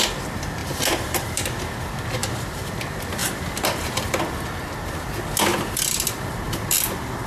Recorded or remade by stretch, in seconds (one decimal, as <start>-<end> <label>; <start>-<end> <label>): 0.0-0.6 recorded; 0.6-1.6 remade; 1.6-2.2 recorded; 2.2-2.7 remade; 2.7-3.2 recorded; 3.2-4.2 remade; 4.2-5.5 recorded; 5.5-6.7 remade; 6.7-7.3 recorded